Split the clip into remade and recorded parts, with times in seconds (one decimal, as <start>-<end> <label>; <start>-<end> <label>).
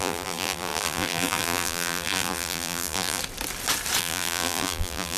0.0-3.2 remade; 3.2-4.0 recorded; 4.0-5.2 remade